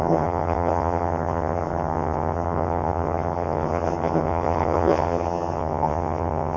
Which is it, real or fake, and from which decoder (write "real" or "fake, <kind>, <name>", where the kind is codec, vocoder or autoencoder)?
fake, vocoder, HiFi-GAN